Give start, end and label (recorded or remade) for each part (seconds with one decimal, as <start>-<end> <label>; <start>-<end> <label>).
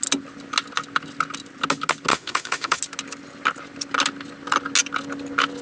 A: 0.0-2.1 recorded; 2.1-2.8 remade; 2.8-5.6 recorded